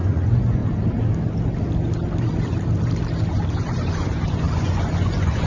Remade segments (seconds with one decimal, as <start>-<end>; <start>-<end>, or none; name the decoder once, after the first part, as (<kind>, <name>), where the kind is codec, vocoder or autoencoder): 0.0-0.6 (vocoder, Vocos); 3.9-5.5